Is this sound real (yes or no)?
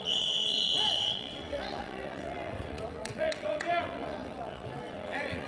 no